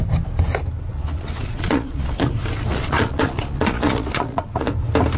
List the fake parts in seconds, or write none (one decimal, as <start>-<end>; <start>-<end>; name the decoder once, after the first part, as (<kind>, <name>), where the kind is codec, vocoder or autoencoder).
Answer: 0.9-2.3 (vocoder, Vocos); 2.7-4.7